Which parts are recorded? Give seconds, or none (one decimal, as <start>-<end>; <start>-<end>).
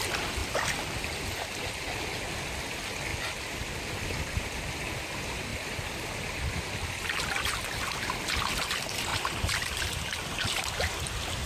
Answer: 0.0-3.1; 4.7-5.5; 6.1-9.1; 9.8-11.5